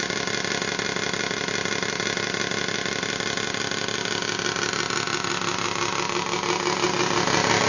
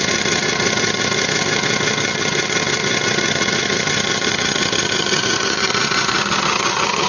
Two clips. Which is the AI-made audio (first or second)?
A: second